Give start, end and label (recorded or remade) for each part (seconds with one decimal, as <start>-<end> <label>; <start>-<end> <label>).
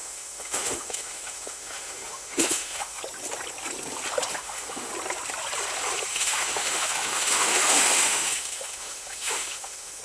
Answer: 0.0-3.0 remade; 3.0-4.3 recorded; 4.3-4.9 remade; 4.9-6.1 recorded; 6.1-10.0 remade